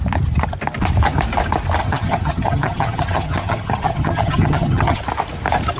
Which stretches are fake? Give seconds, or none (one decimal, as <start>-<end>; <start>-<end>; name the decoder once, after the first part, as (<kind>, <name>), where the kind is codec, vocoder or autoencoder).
1.8-5.0 (vocoder, HiFi-GAN)

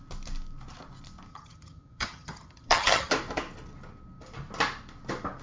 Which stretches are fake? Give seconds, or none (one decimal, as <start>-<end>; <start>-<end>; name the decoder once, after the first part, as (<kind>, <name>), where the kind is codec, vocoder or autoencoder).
1.3-3.1 (vocoder, HiFi-GAN)

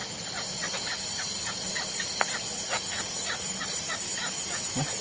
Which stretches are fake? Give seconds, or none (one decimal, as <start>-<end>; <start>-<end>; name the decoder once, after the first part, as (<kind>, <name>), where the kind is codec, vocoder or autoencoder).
none

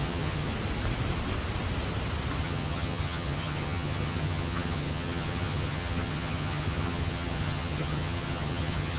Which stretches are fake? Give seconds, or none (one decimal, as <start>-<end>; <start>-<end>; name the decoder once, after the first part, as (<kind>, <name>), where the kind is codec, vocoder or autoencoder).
0.0-0.5 (vocoder, HiFi-GAN); 2.4-9.0

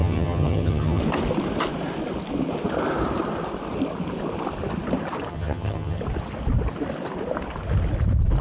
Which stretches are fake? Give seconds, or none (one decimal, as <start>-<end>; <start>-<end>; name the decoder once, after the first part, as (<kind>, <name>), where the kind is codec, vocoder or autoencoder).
0.0-1.0 (vocoder, HiFi-GAN); 5.3-6.0

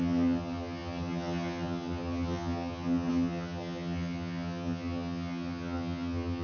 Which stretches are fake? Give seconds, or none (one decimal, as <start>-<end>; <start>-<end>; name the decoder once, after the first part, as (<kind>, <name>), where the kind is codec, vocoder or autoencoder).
0.0-6.4 (vocoder, HiFi-GAN)